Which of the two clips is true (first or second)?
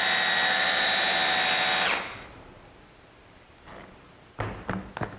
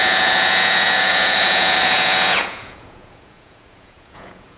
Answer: first